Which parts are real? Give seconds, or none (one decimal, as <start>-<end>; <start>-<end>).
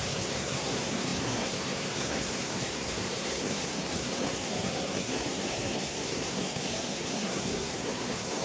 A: none